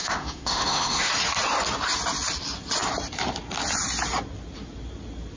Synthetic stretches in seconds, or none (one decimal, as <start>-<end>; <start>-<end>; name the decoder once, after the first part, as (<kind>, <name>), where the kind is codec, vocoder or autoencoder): 0.0-1.1 (autoencoder, DAC-VAE)